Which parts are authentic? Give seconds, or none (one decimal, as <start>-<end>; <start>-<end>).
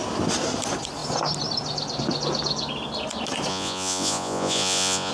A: 0.0-3.5